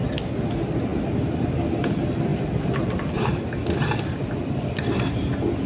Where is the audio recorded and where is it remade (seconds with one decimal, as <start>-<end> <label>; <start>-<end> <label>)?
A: 0.0-2.3 recorded; 2.3-5.0 remade; 5.0-5.7 recorded